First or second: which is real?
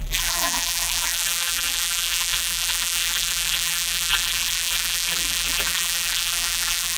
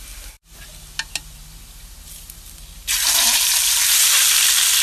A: second